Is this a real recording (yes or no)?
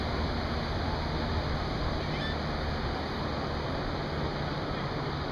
yes